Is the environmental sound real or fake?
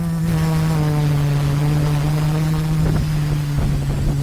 real